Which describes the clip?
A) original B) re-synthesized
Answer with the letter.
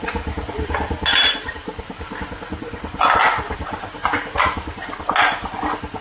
A